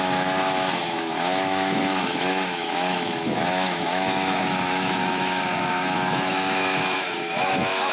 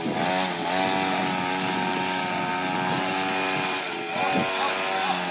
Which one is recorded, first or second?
second